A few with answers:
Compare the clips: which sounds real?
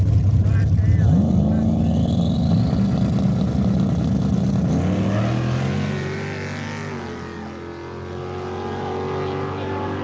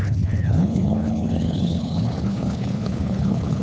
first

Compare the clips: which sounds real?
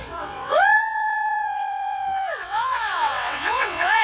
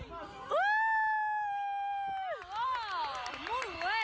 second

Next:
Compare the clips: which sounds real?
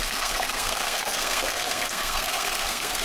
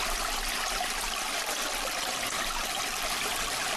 second